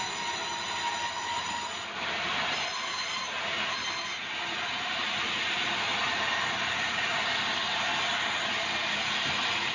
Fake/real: real